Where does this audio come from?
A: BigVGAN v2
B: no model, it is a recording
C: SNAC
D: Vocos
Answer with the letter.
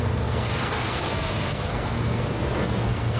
C